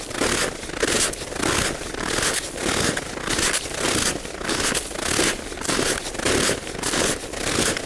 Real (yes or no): yes